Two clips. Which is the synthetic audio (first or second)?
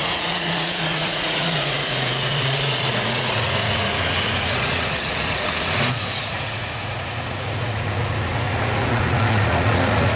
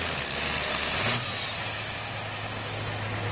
first